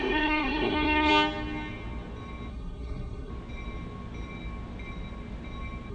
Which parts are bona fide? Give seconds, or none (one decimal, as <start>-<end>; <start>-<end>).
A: 1.1-2.5; 3.3-5.9